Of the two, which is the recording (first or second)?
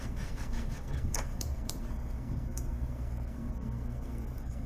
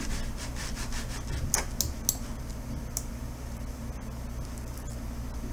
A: second